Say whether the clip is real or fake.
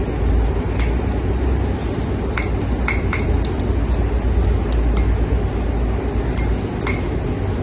real